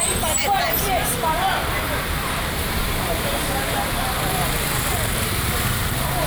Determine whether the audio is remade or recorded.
remade